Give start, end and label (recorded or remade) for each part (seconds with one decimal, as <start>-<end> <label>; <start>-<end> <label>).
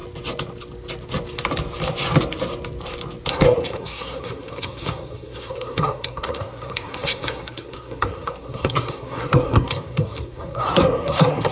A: 0.0-3.3 recorded; 3.3-11.5 remade